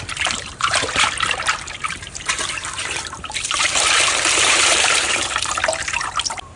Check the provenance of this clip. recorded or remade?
remade